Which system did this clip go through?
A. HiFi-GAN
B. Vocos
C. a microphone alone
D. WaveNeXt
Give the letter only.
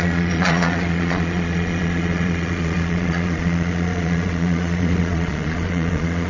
B